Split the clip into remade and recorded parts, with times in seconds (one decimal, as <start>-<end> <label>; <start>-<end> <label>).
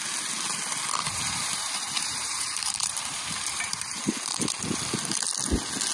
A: 0.0-1.0 recorded; 1.0-4.5 remade; 4.5-5.9 recorded